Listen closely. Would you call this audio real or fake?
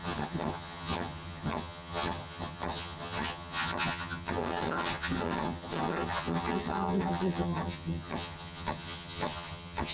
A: fake